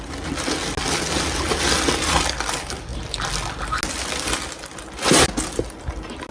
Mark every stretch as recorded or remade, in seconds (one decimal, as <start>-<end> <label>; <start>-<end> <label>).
0.0-6.3 recorded